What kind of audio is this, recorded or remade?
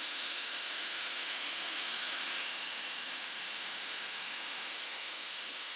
remade